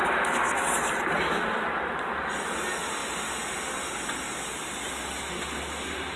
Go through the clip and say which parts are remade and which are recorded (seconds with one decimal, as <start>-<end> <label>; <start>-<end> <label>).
0.0-6.2 recorded